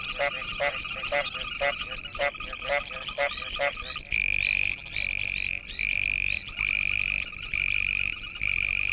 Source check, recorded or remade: recorded